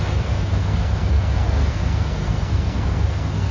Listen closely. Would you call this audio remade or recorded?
remade